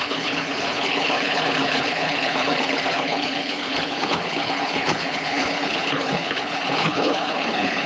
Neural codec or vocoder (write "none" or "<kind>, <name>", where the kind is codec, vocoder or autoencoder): codec, HILCodec